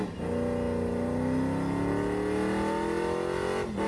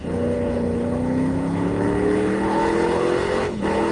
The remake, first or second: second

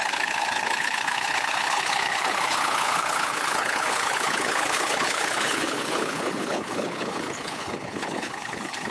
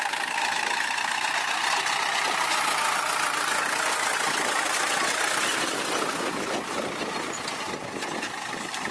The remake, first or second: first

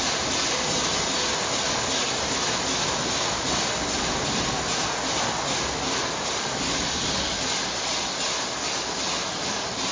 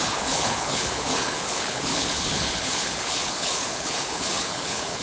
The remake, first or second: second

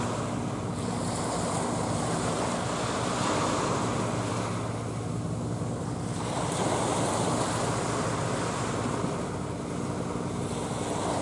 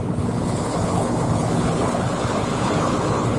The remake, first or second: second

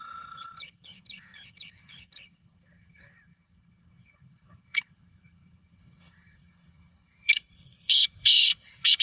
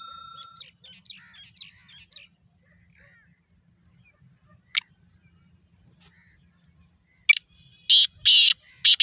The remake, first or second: first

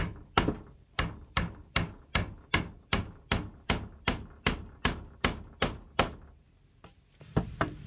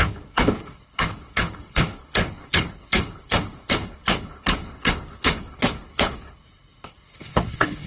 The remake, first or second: second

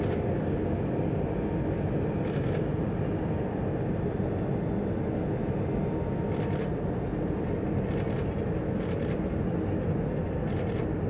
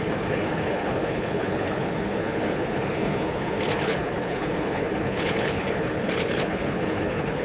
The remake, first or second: second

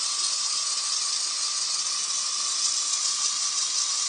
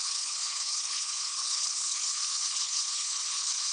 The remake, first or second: second